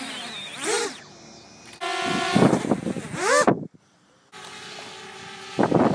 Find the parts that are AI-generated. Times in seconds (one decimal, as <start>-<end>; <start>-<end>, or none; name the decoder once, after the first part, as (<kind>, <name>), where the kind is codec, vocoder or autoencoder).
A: none